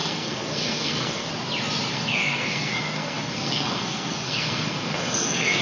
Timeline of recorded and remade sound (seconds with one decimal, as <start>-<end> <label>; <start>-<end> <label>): 0.0-1.3 remade; 1.3-1.9 recorded; 1.9-5.6 remade